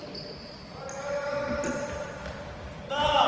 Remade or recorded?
recorded